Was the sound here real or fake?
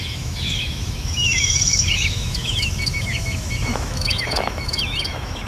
fake